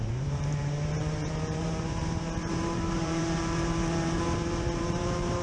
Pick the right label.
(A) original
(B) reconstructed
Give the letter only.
B